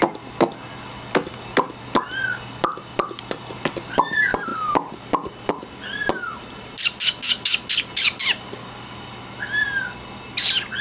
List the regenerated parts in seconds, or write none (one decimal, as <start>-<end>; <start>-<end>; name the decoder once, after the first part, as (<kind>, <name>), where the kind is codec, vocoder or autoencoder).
none